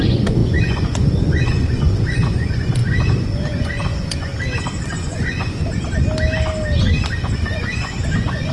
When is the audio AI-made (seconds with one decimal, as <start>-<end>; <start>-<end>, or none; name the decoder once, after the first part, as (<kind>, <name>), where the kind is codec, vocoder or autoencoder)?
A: 0.0-4.3 (vocoder, Vocos); 4.9-5.6; 6.8-8.5